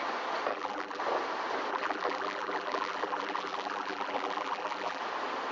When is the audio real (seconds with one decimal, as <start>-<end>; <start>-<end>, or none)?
0.0-0.5; 1.0-1.7; 5.0-5.5